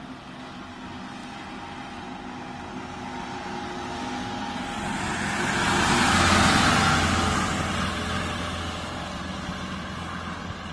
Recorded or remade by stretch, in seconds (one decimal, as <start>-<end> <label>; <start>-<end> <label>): 0.0-10.7 recorded